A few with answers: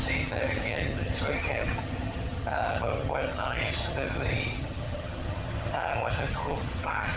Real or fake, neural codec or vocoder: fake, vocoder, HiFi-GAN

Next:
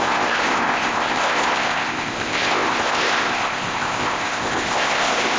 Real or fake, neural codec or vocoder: fake, codec, ZipCodec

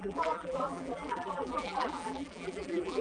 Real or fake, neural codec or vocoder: fake, vocoder, BigVGAN v2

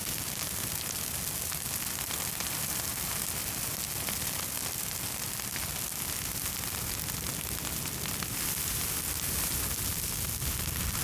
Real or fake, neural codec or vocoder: real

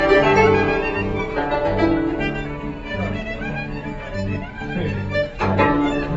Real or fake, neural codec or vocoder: real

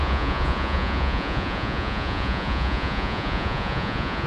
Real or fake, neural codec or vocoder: fake, vocoder, Vocos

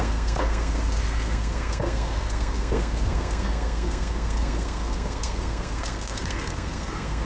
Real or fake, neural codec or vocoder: fake, codec, SNAC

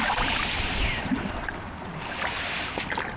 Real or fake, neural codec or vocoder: fake, vocoder, BigVGAN v2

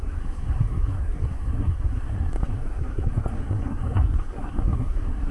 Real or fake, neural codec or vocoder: fake, codec, SNAC